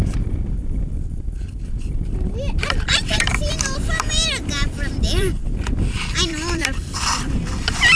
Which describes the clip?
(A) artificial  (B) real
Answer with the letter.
A